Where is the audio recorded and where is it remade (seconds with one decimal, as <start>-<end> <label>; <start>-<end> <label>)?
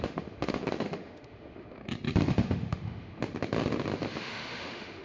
0.0-1.8 remade; 1.8-2.3 recorded; 2.3-3.2 remade; 3.2-4.2 recorded; 4.2-5.0 remade